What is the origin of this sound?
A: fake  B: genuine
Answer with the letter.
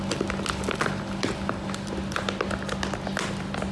B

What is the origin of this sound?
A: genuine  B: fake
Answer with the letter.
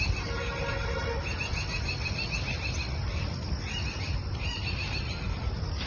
A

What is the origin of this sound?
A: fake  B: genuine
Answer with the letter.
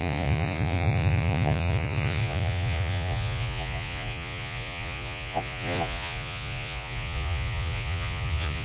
A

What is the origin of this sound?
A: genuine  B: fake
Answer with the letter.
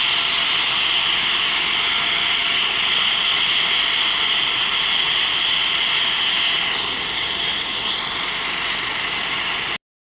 A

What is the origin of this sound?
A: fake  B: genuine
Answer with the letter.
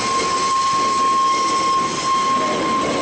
B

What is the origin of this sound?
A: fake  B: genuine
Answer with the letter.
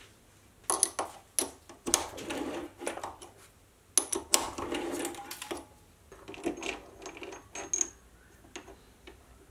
B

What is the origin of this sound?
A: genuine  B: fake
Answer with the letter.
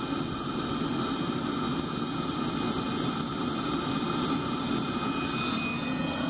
A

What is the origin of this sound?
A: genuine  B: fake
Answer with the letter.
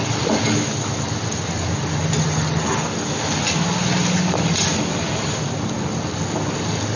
A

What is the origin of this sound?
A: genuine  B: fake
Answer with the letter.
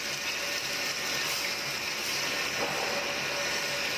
A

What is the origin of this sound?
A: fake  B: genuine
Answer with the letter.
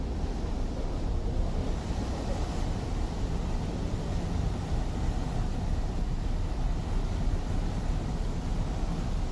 B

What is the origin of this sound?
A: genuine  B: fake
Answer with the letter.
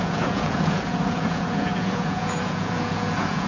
B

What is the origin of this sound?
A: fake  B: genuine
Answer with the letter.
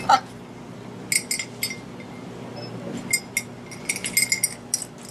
B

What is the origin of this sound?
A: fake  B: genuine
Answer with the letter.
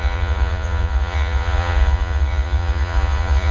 A